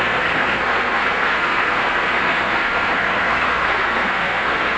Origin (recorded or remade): remade